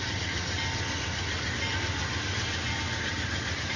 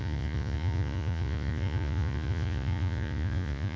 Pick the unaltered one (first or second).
first